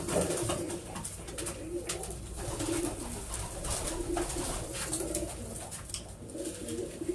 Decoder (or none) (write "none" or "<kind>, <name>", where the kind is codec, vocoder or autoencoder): none